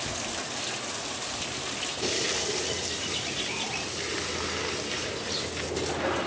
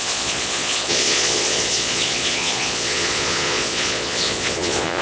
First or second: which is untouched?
first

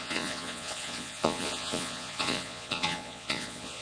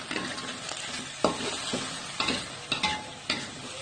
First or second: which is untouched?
second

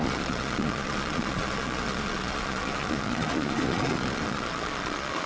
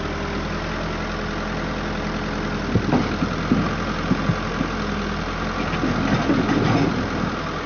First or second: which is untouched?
second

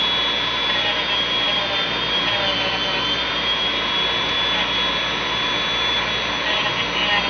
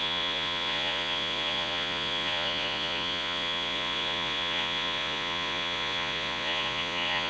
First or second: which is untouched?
first